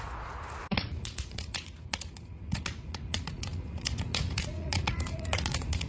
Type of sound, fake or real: fake